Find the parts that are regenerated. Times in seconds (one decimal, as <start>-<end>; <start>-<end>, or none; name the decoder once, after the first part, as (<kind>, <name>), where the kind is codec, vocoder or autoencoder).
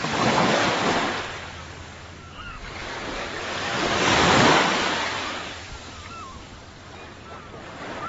0.0-0.6 (codec, DAC); 1.8-6.5